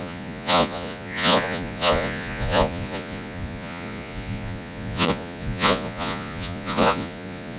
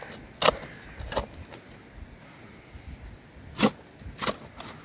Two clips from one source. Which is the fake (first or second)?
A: first